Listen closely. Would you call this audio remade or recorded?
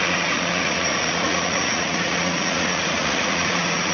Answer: remade